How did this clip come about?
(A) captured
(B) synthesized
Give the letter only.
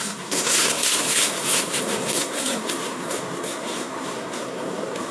B